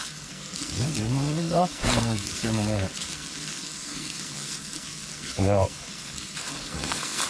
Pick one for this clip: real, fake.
fake